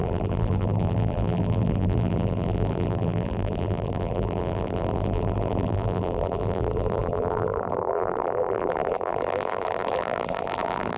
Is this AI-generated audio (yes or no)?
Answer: yes